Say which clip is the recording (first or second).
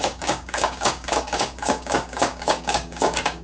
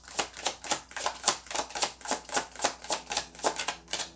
second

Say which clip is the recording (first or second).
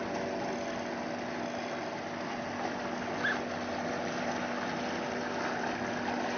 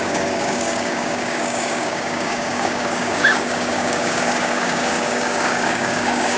first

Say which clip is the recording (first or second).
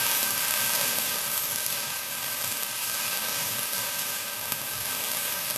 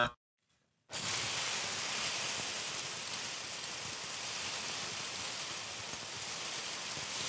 second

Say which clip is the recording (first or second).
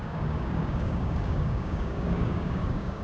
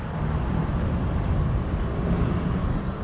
second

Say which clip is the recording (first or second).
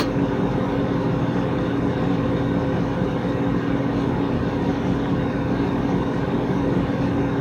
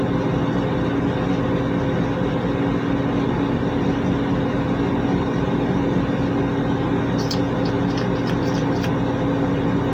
second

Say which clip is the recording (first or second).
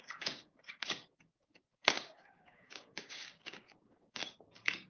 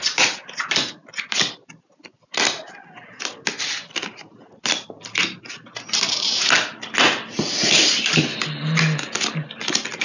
second